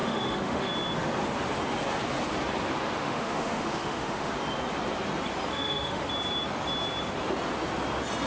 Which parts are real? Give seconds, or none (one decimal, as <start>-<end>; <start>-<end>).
0.7-3.0; 4.3-5.5; 6.0-8.3